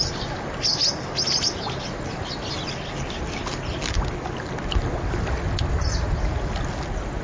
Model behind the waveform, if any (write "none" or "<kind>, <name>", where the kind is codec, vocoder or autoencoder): none